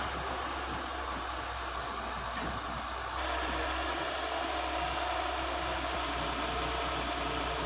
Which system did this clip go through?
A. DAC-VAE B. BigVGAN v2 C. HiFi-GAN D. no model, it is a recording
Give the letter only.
D